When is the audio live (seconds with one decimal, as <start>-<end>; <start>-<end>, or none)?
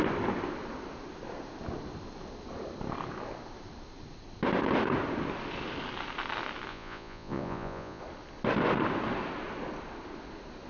0.0-6.7; 8.0-10.7